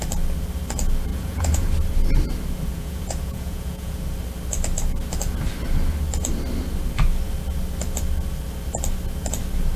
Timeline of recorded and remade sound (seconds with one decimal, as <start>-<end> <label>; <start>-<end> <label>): 0.0-1.1 recorded; 1.1-1.7 remade; 1.7-2.7 recorded; 2.7-4.0 remade; 4.0-9.8 recorded